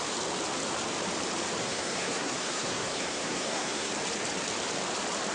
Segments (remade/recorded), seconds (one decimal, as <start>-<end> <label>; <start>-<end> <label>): 0.0-1.6 recorded; 1.6-3.9 remade; 3.9-5.3 recorded